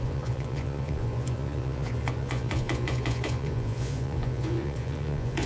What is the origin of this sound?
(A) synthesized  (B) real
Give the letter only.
A